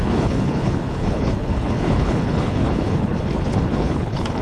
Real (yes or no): no